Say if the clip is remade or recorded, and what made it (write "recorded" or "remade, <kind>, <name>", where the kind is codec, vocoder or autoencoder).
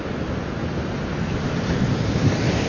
recorded